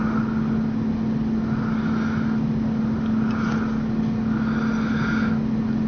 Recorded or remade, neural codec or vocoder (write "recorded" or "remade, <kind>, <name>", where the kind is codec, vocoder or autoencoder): recorded